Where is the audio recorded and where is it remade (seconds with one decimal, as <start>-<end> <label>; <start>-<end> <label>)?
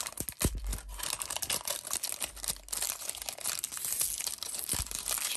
0.0-5.4 recorded